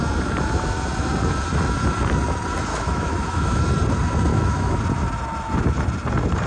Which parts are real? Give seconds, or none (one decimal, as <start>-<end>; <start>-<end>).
0.0-2.7; 3.6-4.3; 4.8-6.5